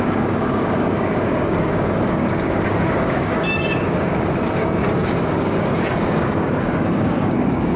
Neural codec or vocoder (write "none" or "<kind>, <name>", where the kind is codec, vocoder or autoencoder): codec, DAC